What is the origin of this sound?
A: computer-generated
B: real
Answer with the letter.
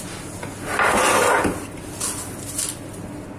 B